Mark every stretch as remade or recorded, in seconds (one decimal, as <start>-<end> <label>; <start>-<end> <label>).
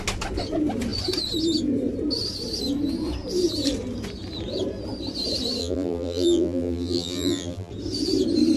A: 0.0-5.6 recorded; 5.6-7.7 remade; 7.7-8.6 recorded